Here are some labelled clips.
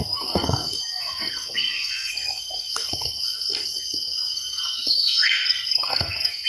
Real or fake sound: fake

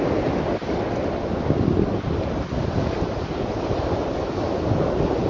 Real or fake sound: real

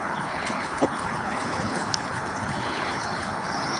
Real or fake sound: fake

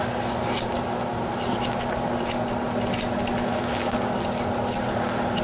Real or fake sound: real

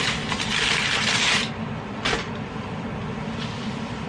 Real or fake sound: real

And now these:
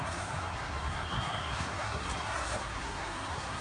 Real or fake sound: fake